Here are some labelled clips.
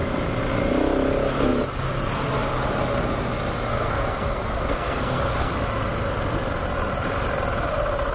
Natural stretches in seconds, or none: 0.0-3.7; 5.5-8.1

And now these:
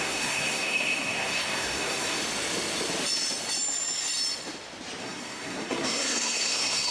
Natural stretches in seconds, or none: 2.2-5.0

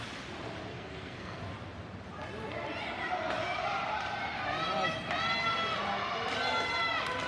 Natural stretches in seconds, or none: 0.0-0.7; 1.4-7.3

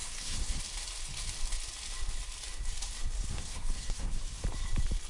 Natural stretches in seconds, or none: 0.6-3.3; 4.2-5.1